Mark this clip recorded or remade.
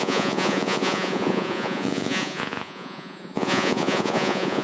remade